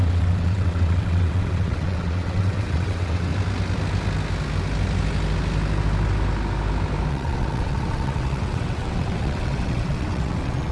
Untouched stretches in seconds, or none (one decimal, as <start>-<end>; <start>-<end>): 3.3-7.1